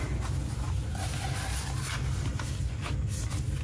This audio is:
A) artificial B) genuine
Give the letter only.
B